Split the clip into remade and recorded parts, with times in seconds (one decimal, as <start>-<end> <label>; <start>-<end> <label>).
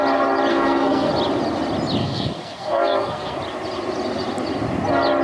0.0-0.5 recorded; 0.5-1.1 remade; 1.1-2.0 recorded; 2.0-3.4 remade; 3.4-5.2 recorded